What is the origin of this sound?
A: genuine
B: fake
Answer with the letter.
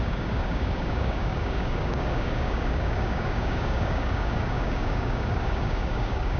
B